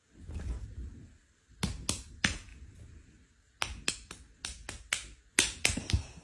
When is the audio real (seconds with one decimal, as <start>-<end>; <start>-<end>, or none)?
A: 0.0-6.2